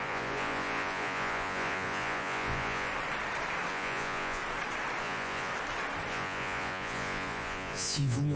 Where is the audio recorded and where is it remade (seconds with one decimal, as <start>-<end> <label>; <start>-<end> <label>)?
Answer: 0.0-2.9 remade; 2.9-3.7 recorded; 3.7-4.4 remade; 4.4-5.0 recorded; 5.0-5.5 remade; 5.5-6.1 recorded; 6.1-8.4 remade